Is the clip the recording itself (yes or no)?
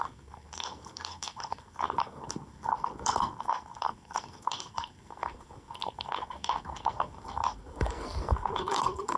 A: no